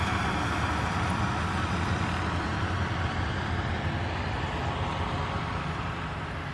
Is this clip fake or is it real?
real